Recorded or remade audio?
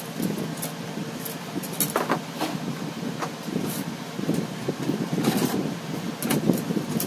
recorded